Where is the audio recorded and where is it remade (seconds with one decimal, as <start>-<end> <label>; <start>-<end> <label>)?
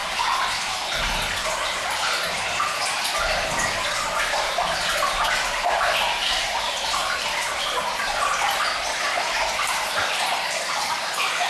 0.0-7.0 recorded; 7.0-7.8 remade; 7.8-11.5 recorded